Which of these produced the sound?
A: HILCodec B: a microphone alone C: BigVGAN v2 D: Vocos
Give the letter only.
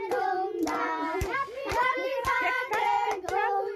C